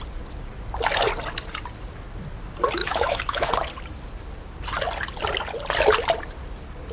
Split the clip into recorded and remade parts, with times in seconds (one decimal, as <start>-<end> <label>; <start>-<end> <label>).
0.0-2.8 recorded; 2.8-3.5 remade; 3.5-6.9 recorded

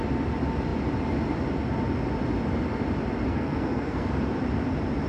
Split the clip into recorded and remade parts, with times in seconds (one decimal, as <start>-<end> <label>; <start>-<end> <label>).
0.0-3.3 recorded; 3.3-4.1 remade; 4.1-5.1 recorded